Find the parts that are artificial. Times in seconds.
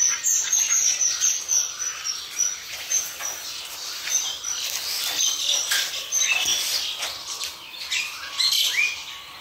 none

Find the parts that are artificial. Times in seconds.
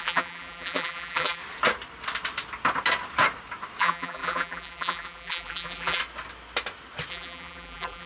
0.0-1.4 (vocoder, BigVGAN v2); 3.8-6.0; 7.1-8.1